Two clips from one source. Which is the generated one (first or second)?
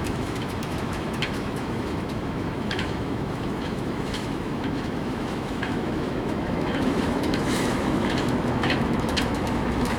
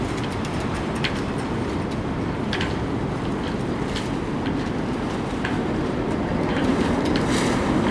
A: first